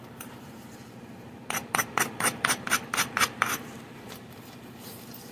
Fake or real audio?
fake